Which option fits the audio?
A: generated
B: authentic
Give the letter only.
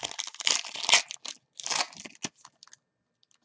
B